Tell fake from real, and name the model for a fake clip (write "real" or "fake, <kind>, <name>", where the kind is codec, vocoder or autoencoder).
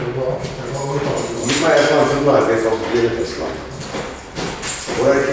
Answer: real